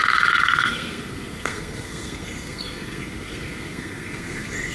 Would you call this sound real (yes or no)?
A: no